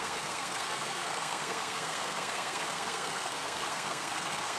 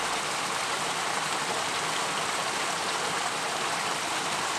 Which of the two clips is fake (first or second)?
first